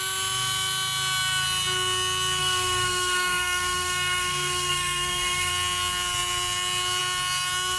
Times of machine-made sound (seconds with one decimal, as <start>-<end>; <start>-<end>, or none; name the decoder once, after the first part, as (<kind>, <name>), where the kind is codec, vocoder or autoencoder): 2.4-5.5 (codec, SNAC)